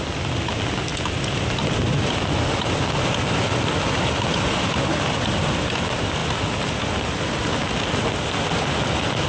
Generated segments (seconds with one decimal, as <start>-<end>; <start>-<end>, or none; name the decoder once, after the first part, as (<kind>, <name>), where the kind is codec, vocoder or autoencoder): none